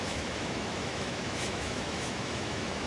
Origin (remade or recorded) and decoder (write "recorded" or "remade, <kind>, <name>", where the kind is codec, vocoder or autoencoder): remade, autoencoder, DAC-VAE